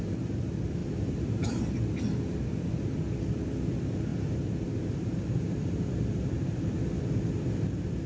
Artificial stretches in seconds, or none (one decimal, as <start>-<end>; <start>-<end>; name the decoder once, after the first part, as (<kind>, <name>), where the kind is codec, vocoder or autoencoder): 0.8-1.6 (vocoder, BigVGAN v2); 4.1-6.6